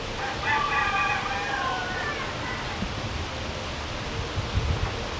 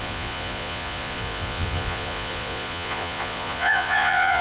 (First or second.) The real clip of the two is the first